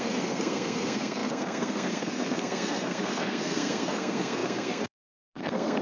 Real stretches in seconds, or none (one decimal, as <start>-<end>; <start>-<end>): none